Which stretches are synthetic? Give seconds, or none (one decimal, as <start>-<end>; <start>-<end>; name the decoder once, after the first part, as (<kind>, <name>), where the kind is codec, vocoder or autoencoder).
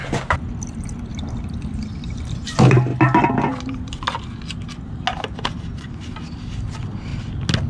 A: none